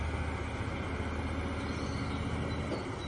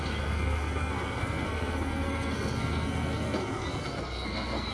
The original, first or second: first